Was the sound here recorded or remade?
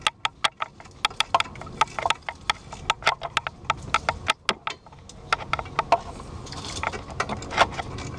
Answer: recorded